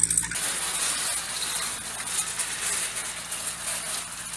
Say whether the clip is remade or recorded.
recorded